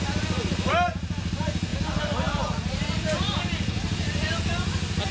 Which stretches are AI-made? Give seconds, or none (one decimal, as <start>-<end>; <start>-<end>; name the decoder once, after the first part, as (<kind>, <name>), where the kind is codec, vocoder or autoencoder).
none